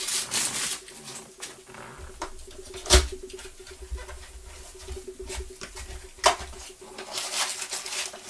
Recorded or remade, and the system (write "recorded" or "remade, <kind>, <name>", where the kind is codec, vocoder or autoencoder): recorded